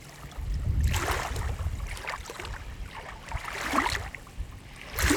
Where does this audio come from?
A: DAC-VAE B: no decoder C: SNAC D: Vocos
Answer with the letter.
B